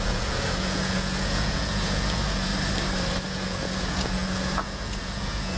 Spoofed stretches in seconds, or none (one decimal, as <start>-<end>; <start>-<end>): 0.0-2.5; 3.3-5.6

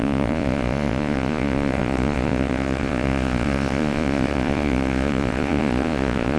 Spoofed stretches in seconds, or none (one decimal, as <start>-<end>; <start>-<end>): 0.0-6.4

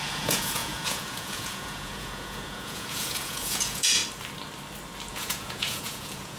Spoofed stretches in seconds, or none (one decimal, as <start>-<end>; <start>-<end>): 0.0-4.0; 5.1-6.4

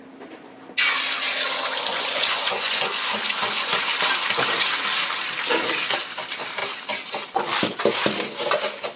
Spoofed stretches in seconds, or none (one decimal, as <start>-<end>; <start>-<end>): 1.9-3.9

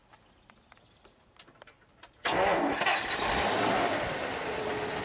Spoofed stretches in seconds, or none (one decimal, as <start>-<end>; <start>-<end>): none

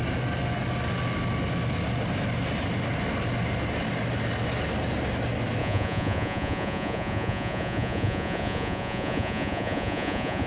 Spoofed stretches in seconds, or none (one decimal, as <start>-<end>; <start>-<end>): 5.6-10.5

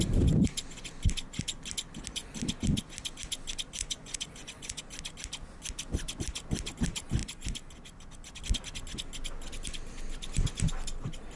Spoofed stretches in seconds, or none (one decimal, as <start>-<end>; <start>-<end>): 3.8-4.8

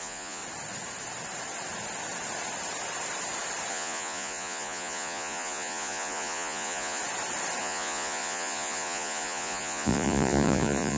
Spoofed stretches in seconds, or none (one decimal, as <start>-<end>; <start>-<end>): 0.0-0.4; 3.7-7.0; 7.6-11.0